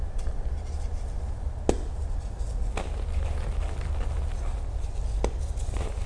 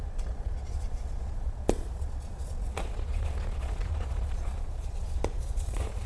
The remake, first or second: second